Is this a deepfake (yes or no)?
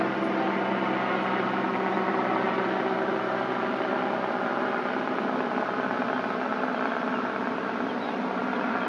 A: no